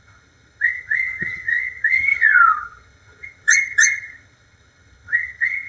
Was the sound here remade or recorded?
remade